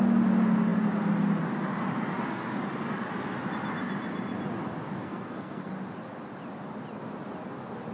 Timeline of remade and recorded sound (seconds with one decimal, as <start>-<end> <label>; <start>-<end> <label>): 0.0-5.0 recorded; 5.0-5.7 remade; 5.7-7.9 recorded